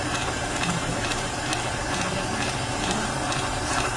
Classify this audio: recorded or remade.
remade